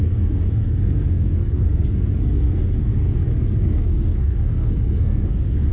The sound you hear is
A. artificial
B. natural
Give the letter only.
A